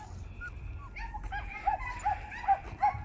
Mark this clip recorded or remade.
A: recorded